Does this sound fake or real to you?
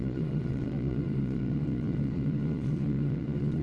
fake